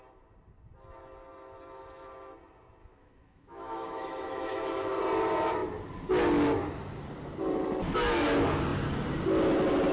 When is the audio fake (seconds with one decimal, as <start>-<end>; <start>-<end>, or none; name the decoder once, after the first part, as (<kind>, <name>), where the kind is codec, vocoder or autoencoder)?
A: 2.8-5.0 (autoencoder, DAC-VAE)